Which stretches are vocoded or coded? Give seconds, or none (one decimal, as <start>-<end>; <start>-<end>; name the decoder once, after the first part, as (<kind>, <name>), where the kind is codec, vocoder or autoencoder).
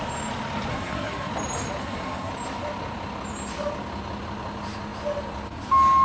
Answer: 0.7-1.3 (codec, SNAC); 1.8-2.3